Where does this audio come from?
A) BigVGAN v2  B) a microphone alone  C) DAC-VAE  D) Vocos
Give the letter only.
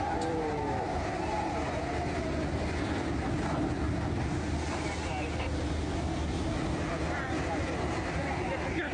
B